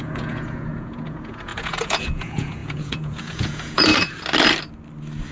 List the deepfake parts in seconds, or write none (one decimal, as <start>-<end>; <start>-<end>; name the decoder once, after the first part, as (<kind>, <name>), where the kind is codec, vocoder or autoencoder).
0.0-3.9 (vocoder, Vocos)